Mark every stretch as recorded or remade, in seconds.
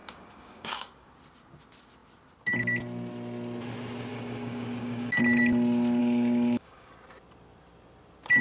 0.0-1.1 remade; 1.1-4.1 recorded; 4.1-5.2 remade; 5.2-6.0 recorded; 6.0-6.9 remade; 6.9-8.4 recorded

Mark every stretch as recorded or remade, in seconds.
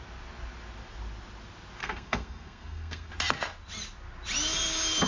0.0-1.8 recorded; 1.8-3.1 remade; 3.1-5.1 recorded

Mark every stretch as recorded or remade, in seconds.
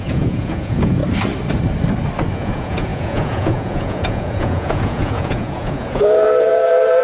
0.0-1.0 remade; 1.0-2.3 recorded; 2.3-7.0 remade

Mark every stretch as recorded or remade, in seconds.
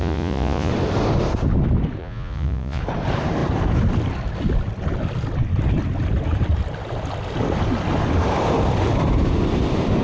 0.0-0.7 remade; 0.7-2.0 recorded; 2.0-2.8 remade; 2.8-10.0 recorded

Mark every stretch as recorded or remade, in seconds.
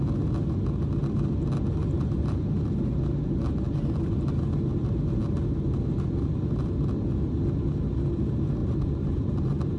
0.0-1.8 recorded; 1.8-2.7 remade; 2.7-8.6 recorded; 8.6-9.4 remade; 9.4-9.8 recorded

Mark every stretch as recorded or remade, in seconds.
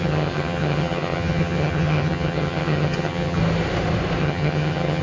0.0-3.4 remade; 3.4-4.2 recorded; 4.2-5.0 remade